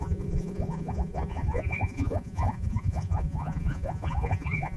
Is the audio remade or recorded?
remade